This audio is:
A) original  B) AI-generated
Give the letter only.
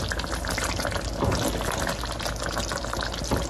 A